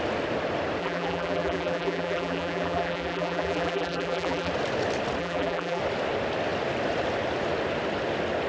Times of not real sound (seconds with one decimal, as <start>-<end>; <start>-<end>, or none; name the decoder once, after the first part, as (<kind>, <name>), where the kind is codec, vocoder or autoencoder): 0.8-4.5 (vocoder, BigVGAN v2); 5.2-5.8